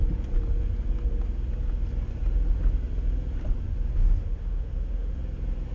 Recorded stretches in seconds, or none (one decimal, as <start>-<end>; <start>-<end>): 0.0-4.0; 5.2-5.7

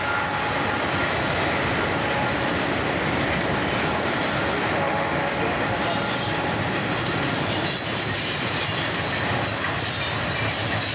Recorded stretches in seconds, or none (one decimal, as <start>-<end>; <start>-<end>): 0.0-4.7; 5.3-10.9

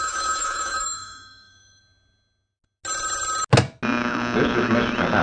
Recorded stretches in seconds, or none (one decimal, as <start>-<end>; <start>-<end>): 1.8-5.2

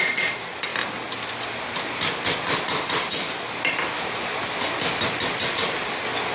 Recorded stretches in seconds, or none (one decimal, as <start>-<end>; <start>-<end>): 0.0-6.3